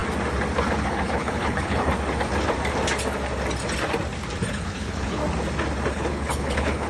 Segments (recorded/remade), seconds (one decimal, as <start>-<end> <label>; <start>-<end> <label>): 0.0-0.8 recorded; 0.8-1.9 remade; 1.9-4.5 recorded; 4.5-5.2 remade; 5.2-5.9 recorded; 5.9-6.9 remade